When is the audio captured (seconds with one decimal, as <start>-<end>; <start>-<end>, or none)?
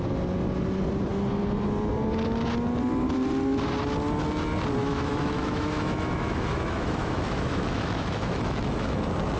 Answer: 0.0-4.8; 9.0-9.4